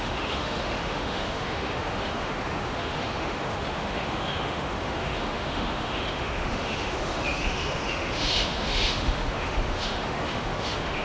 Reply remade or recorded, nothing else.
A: remade